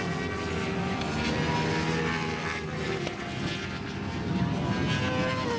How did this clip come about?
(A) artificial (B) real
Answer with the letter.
B